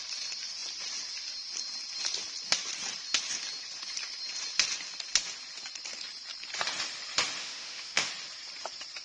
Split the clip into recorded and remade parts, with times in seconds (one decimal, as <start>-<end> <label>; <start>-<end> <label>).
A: 0.0-7.4 recorded; 7.4-8.1 remade; 8.1-9.0 recorded